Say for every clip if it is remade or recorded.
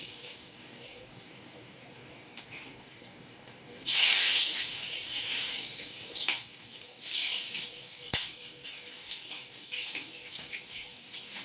remade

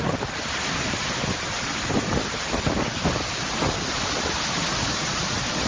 recorded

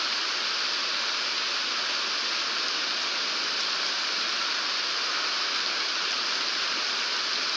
recorded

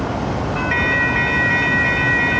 recorded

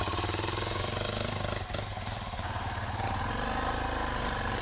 recorded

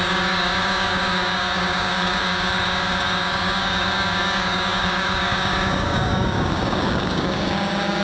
remade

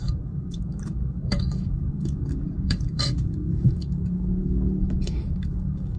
remade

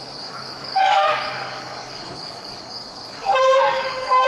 remade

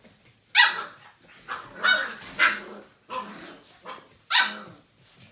recorded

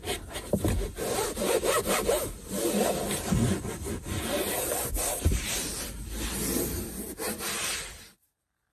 recorded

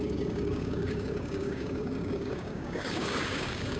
remade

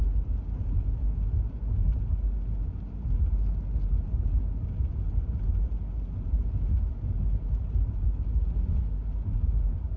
recorded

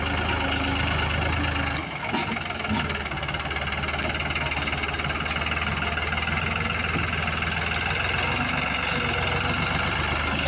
recorded